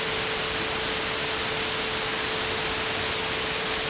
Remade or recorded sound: recorded